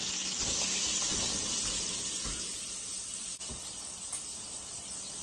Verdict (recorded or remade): recorded